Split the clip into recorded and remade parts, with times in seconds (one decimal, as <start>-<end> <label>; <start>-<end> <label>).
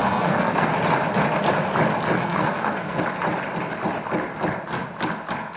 0.0-0.7 remade; 0.7-2.2 recorded; 2.2-3.0 remade; 3.0-5.6 recorded